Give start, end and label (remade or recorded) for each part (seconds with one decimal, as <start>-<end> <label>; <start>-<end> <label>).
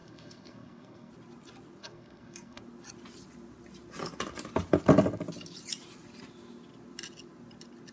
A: 0.0-1.1 remade; 1.1-1.8 recorded; 1.8-2.6 remade; 2.6-7.9 recorded